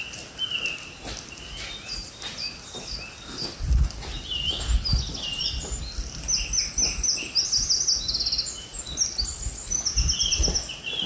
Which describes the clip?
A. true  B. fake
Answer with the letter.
A